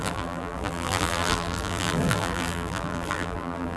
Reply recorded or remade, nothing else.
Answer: remade